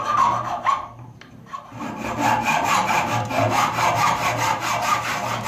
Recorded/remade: remade